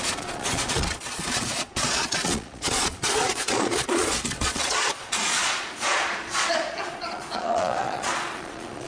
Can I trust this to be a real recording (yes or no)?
no